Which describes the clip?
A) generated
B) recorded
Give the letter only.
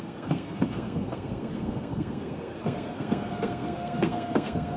A